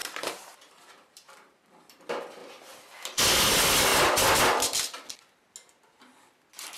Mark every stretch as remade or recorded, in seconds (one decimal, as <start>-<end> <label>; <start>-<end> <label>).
0.0-2.0 remade; 2.0-6.8 recorded